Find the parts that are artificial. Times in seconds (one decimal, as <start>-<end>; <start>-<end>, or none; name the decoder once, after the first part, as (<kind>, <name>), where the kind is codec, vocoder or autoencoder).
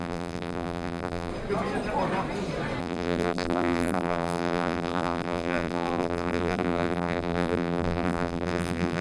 0.0-1.3 (vocoder, BigVGAN v2); 2.8-9.0